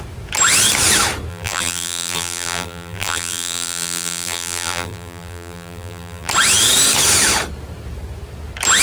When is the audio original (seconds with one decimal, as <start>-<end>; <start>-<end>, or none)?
0.0-1.3; 6.3-8.8